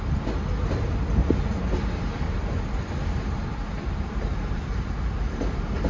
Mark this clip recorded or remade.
recorded